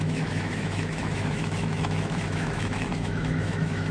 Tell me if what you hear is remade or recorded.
remade